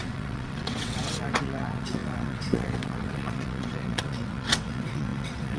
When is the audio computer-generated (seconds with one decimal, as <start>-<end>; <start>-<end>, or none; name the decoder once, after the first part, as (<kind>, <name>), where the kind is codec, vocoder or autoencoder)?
0.0-5.6 (vocoder, WaveNeXt)